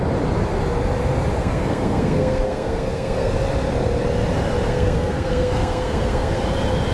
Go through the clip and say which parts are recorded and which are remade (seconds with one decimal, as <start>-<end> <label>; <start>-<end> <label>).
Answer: 0.0-1.4 recorded; 1.4-3.3 remade; 3.3-4.7 recorded; 4.7-6.4 remade; 6.4-6.9 recorded